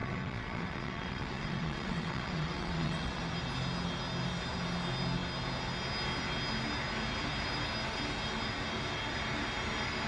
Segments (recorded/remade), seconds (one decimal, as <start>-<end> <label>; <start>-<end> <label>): 0.0-3.2 remade; 3.2-10.1 recorded